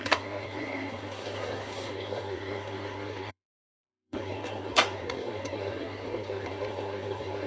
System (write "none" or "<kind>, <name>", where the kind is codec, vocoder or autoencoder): codec, SNAC